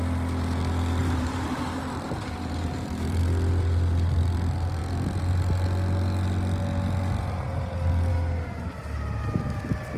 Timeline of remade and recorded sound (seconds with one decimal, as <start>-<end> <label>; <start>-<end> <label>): 0.0-1.0 recorded; 1.0-3.2 remade; 3.2-10.0 recorded